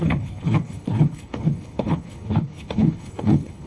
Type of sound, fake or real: fake